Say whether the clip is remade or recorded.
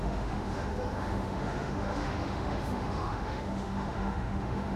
remade